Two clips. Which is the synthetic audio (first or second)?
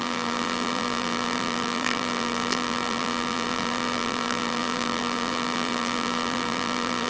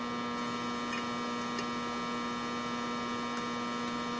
first